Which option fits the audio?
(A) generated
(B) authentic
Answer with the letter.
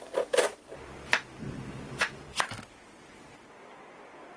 B